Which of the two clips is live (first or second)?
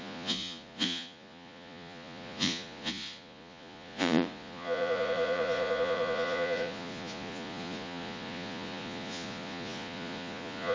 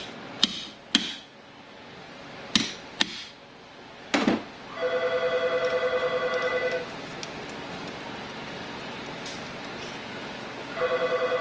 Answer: second